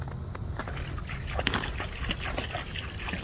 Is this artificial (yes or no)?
no